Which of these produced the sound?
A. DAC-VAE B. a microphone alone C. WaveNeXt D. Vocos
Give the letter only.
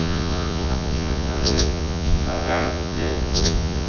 D